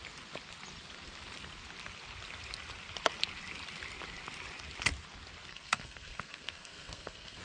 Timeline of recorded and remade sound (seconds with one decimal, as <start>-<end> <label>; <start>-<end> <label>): 0.0-5.5 recorded; 5.5-7.4 remade